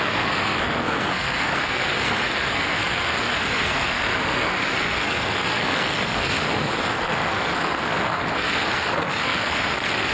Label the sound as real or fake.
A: fake